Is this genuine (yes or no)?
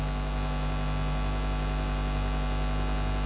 yes